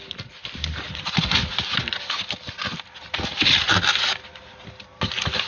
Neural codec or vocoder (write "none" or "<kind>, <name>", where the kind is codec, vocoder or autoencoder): none